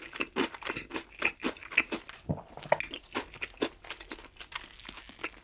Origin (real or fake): real